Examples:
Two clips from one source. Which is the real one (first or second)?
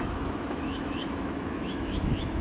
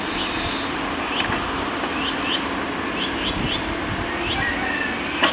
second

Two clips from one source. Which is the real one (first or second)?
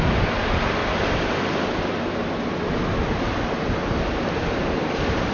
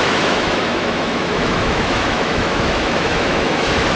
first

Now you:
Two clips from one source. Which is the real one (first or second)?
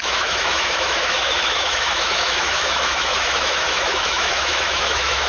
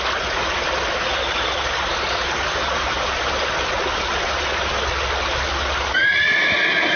second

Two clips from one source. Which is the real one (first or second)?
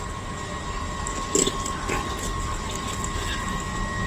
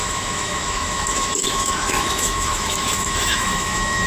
first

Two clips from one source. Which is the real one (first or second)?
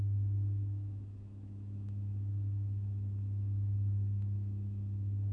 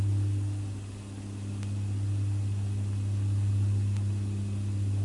second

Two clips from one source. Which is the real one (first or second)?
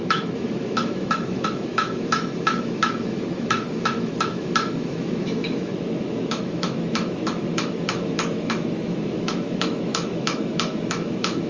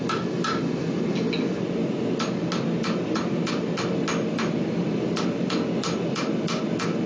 second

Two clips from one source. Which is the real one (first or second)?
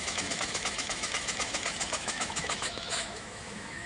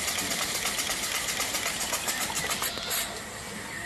second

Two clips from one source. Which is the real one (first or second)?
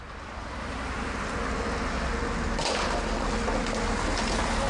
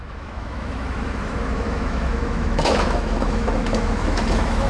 first